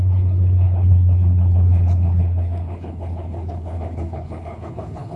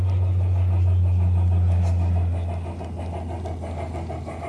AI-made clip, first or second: first